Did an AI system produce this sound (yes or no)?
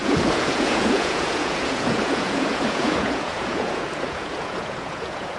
yes